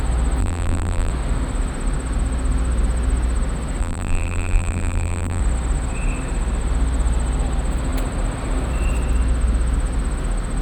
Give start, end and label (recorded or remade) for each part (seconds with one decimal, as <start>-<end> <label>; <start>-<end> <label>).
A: 0.0-0.4 recorded; 0.4-1.1 remade; 1.1-3.8 recorded; 3.8-5.4 remade; 5.4-10.6 recorded